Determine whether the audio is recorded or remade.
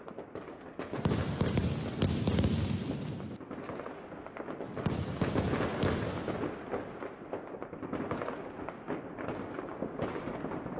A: recorded